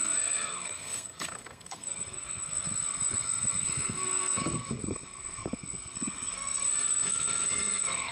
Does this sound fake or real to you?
fake